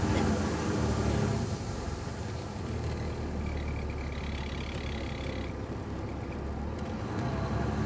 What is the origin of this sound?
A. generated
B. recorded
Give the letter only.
B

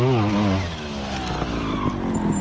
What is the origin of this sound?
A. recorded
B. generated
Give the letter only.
A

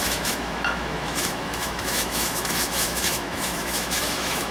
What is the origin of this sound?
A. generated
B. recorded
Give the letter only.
A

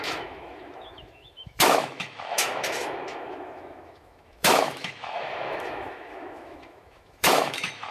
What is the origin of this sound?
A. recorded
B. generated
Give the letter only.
B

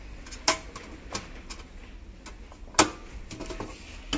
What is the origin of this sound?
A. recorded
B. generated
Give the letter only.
A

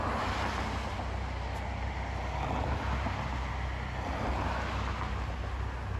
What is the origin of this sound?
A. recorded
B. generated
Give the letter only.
A